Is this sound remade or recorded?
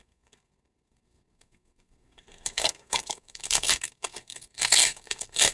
remade